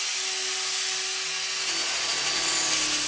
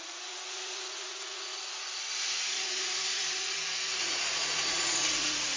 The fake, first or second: second